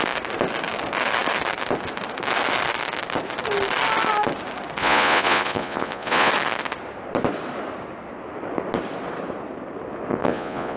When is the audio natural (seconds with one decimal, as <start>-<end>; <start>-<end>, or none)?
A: 0.0-4.8; 6.3-10.1